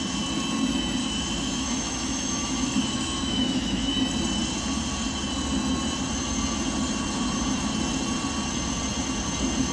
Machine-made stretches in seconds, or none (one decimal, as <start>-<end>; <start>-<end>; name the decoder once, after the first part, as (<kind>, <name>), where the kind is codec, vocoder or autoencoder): 1.0-3.9 (autoencoder, DAC-VAE)